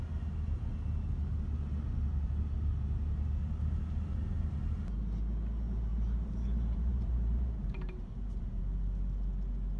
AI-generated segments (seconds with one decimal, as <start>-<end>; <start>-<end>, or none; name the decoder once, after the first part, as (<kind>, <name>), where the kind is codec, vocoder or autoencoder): 5.9-8.6 (vocoder, BigVGAN v2)